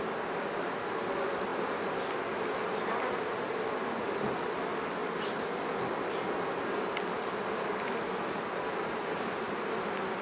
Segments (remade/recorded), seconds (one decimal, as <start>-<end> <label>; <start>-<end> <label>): 0.0-10.2 recorded